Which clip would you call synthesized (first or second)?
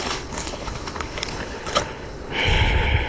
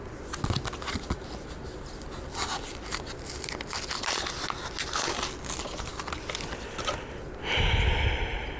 first